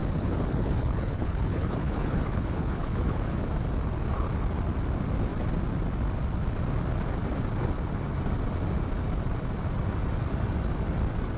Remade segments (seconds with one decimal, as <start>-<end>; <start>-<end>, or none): 0.0-3.5